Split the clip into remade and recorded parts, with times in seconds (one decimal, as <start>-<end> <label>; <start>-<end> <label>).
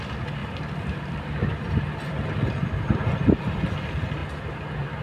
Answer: 0.0-0.4 recorded; 0.4-3.4 remade; 3.4-4.2 recorded; 4.2-5.0 remade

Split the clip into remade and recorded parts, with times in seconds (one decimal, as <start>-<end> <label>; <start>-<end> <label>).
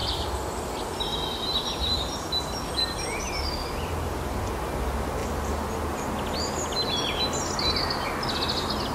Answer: 0.0-4.4 remade; 4.4-5.2 recorded; 5.2-5.7 remade; 5.7-8.9 recorded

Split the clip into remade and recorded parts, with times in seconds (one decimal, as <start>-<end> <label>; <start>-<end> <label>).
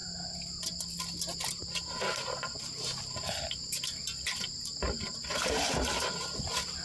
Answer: 0.0-6.8 recorded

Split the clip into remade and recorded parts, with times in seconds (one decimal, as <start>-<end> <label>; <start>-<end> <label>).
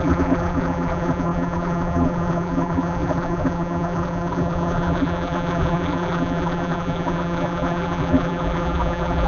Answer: 0.0-9.3 remade